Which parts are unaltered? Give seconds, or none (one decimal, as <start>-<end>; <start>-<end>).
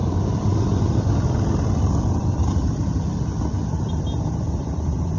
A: 1.8-2.2; 3.1-5.2